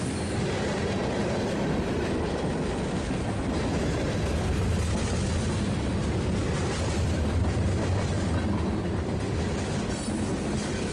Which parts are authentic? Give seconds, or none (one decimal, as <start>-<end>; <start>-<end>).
0.0-10.9